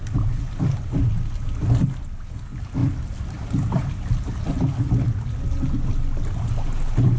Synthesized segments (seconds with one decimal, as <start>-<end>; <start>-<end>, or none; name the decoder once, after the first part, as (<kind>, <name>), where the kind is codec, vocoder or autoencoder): 2.8-4.3 (vocoder, BigVGAN v2)